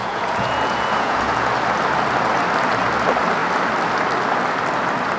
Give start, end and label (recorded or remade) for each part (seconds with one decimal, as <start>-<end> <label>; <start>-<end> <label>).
0.0-1.5 remade; 1.5-5.2 recorded